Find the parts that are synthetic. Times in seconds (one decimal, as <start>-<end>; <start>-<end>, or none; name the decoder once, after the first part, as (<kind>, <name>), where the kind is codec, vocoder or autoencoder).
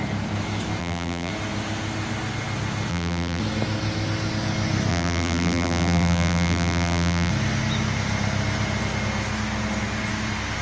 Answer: 0.8-1.3 (vocoder, BigVGAN v2); 2.9-3.4; 4.9-7.3